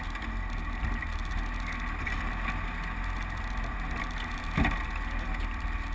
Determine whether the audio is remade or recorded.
recorded